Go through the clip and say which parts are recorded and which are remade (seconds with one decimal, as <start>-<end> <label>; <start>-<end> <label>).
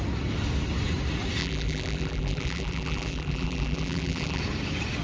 0.0-1.4 recorded; 1.4-4.4 remade; 4.4-5.0 recorded